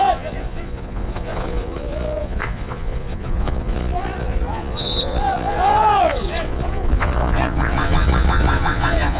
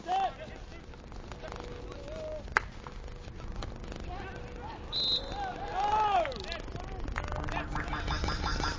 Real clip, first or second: second